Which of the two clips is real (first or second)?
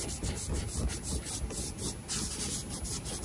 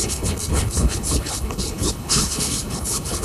first